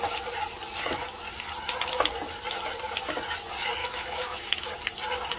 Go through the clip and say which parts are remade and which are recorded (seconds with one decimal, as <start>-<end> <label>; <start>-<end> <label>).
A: 0.0-3.8 recorded; 3.8-4.7 remade; 4.7-5.4 recorded